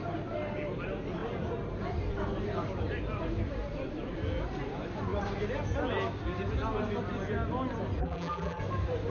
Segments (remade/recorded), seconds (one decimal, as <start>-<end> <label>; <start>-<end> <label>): 0.0-8.0 recorded; 8.0-8.6 remade; 8.6-9.1 recorded